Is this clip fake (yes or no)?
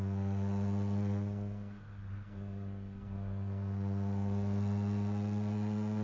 yes